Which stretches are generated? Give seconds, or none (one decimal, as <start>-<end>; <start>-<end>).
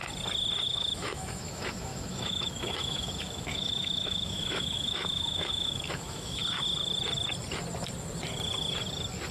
0.6-6.4